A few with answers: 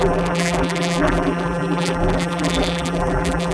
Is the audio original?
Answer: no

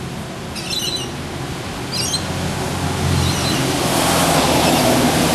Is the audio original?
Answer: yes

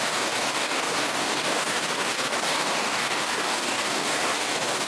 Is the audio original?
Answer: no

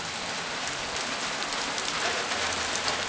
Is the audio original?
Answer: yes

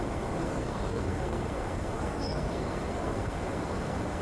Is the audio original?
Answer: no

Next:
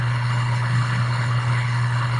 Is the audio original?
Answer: no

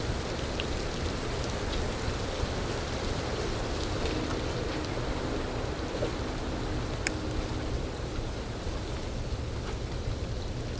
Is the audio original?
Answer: yes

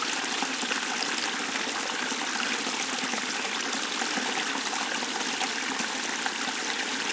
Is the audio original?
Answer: yes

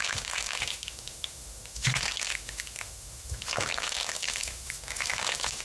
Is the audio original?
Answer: no